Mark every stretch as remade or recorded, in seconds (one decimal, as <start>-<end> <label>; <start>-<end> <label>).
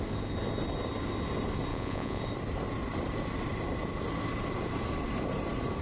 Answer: 0.0-1.7 recorded; 1.7-2.2 remade; 2.2-5.8 recorded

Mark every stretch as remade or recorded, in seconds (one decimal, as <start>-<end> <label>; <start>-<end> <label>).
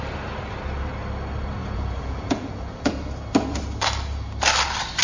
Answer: 0.0-1.6 recorded; 1.6-2.9 remade; 2.9-5.0 recorded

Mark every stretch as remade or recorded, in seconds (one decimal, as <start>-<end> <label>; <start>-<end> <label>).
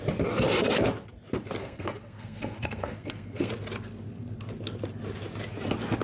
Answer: 0.0-1.6 recorded; 1.6-3.5 remade; 3.5-6.0 recorded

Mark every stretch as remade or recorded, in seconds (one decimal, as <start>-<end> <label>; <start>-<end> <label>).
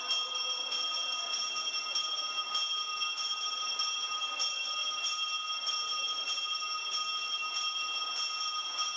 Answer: 0.0-9.0 recorded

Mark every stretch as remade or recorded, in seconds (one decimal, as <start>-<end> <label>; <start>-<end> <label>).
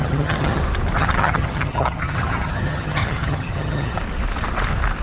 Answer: 0.0-0.6 remade; 0.6-1.0 recorded; 1.0-4.0 remade; 4.0-5.0 recorded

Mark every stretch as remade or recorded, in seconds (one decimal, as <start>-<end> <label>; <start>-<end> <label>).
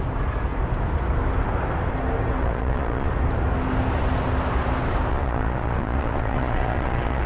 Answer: 0.0-2.4 recorded; 2.4-3.1 remade; 3.1-5.1 recorded; 5.1-7.3 remade